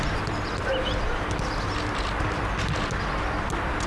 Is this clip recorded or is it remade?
recorded